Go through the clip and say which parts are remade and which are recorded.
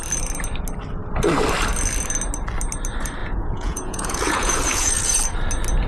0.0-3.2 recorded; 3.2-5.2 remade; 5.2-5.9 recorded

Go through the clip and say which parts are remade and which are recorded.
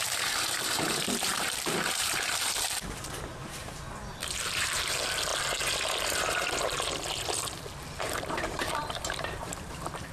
0.0-5.3 remade; 5.3-8.0 recorded; 8.0-10.1 remade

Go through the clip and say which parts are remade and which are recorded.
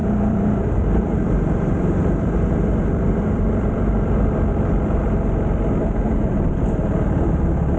0.0-4.3 remade; 4.3-7.8 recorded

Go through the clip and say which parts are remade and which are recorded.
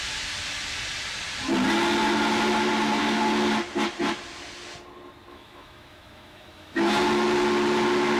0.0-5.3 recorded; 5.3-7.0 remade; 7.0-8.2 recorded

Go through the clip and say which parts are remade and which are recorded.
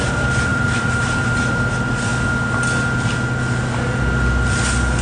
0.0-2.1 remade; 2.1-5.0 recorded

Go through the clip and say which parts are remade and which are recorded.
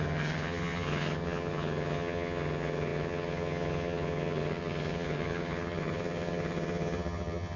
0.0-7.6 remade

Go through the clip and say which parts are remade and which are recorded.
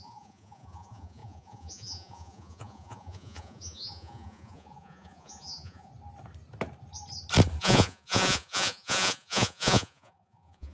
0.0-5.9 remade; 5.9-7.6 recorded; 7.6-10.7 remade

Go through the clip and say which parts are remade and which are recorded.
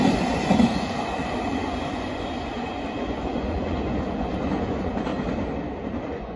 0.0-5.1 remade; 5.1-6.0 recorded; 6.0-6.4 remade